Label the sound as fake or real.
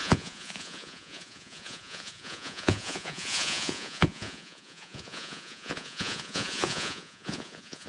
fake